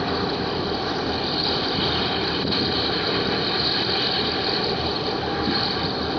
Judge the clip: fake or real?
fake